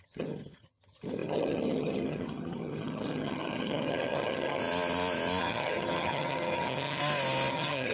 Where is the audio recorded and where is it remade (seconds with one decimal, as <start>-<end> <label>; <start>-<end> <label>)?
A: 0.0-4.6 remade; 4.6-5.4 recorded; 5.4-7.0 remade; 7.0-7.5 recorded; 7.5-7.9 remade